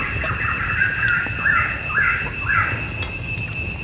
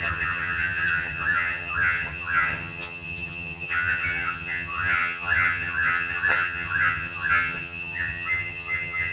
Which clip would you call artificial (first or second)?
second